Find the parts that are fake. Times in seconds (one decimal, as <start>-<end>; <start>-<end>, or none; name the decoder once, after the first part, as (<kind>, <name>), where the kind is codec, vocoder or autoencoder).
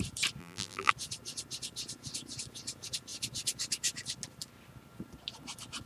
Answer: 0.4-0.9 (vocoder, BigVGAN v2)